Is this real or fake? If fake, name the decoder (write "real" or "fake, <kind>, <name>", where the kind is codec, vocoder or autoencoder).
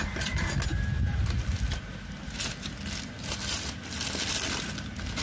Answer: real